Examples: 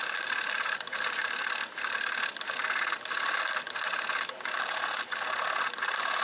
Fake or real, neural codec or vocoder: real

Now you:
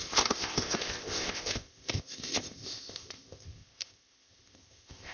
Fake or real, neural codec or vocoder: fake, codec, ZipCodec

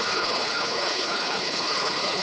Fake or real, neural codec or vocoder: fake, codec, HILCodec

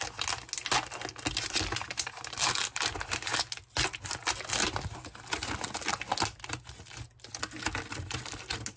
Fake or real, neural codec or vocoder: real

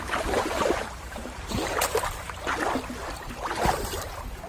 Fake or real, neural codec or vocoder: fake, vocoder, BigVGAN v2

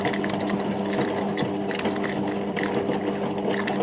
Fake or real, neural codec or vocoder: real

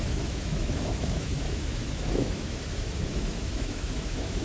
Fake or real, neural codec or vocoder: fake, autoencoder, DAC-VAE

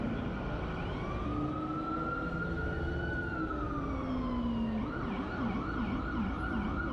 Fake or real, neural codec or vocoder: real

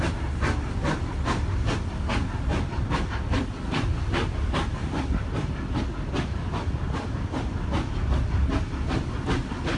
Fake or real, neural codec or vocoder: real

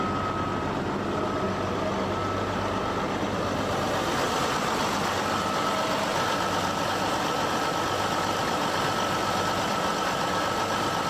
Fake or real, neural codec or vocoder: real